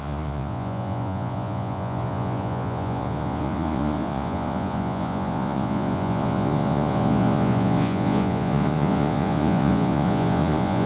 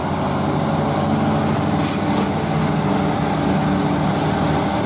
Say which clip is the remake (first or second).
first